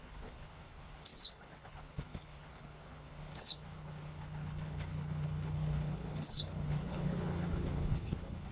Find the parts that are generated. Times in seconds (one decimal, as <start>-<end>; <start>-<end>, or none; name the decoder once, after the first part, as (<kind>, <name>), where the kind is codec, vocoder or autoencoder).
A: 0.0-8.5 (codec, HILCodec)